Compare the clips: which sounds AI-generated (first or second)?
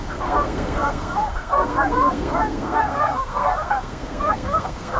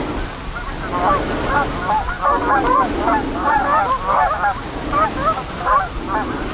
first